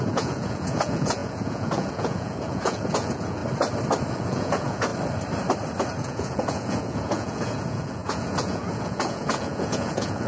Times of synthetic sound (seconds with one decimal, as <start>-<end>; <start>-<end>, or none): 0.0-3.4; 4.1-4.9; 6.0-10.3

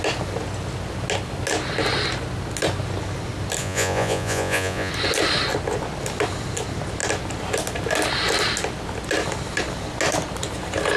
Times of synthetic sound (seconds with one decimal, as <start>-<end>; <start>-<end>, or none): 3.6-4.9

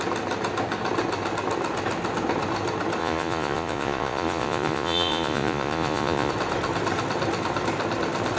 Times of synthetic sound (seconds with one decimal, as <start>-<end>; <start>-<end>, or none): 3.0-6.3

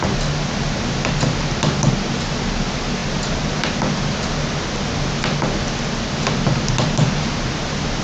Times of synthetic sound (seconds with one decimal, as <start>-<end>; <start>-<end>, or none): none